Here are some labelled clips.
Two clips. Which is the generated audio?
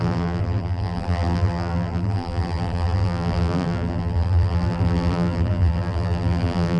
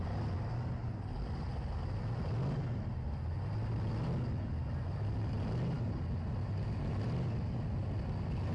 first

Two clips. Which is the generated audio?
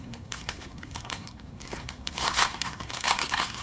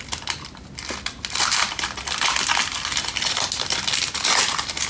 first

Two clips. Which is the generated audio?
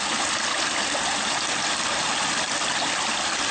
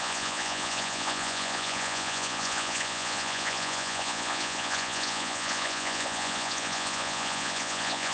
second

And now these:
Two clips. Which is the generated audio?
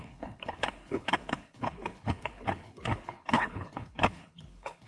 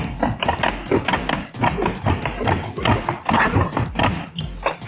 first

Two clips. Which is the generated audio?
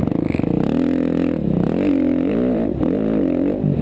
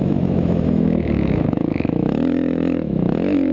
second